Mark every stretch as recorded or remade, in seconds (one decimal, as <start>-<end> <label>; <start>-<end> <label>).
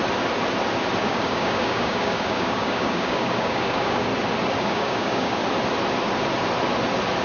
0.0-1.0 recorded; 1.0-4.1 remade; 4.1-4.6 recorded; 4.6-5.4 remade; 5.4-7.2 recorded